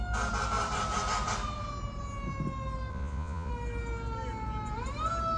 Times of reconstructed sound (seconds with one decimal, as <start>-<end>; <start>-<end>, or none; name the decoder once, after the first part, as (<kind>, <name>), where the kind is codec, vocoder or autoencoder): 2.9-3.5 (vocoder, Vocos)